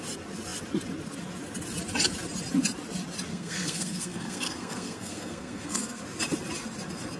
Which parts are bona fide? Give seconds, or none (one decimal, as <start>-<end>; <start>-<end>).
0.0-3.3; 6.0-7.2